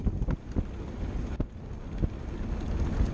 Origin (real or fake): real